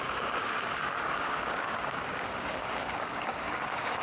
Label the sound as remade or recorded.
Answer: remade